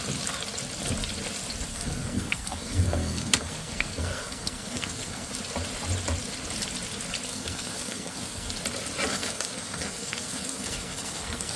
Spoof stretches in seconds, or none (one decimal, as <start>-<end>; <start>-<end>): 1.7-5.3; 7.3-8.5; 9.1-11.6